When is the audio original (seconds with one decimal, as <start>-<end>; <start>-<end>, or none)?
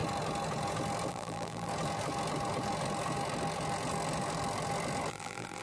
0.0-1.1; 1.7-5.1